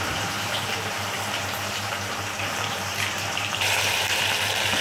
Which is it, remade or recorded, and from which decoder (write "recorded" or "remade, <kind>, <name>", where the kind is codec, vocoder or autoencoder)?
remade, vocoder, BigVGAN v2